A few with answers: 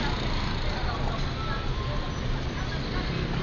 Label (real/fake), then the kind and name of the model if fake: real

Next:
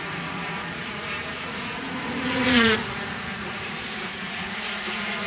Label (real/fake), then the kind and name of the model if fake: fake, vocoder, Vocos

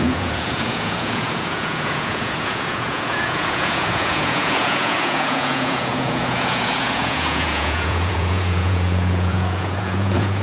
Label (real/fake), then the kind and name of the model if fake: fake, vocoder, Vocos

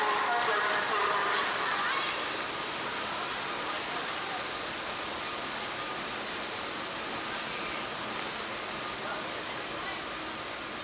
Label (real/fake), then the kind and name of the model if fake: real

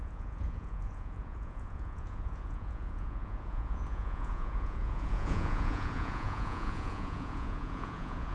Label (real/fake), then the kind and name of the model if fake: fake, vocoder, Vocos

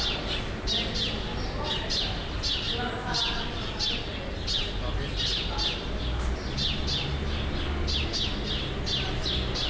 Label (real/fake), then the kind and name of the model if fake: real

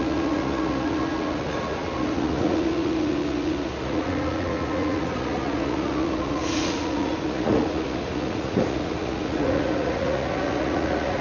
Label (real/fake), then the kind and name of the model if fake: fake, vocoder, Vocos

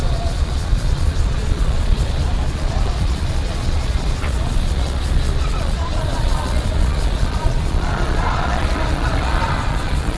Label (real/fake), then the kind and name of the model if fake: fake, vocoder, Vocos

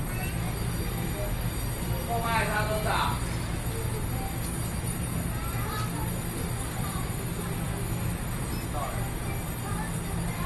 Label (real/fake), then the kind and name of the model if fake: real